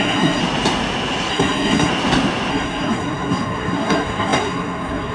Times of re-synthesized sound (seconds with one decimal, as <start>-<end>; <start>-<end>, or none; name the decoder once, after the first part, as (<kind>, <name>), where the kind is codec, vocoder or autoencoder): 0.0-0.4 (codec, SNAC); 1.3-1.9; 2.5-5.1